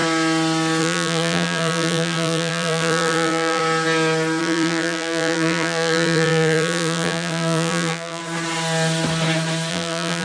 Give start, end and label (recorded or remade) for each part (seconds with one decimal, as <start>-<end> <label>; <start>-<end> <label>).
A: 0.0-0.8 recorded; 0.8-3.6 remade; 3.6-4.4 recorded; 4.4-8.2 remade; 8.2-9.7 recorded; 9.7-10.2 remade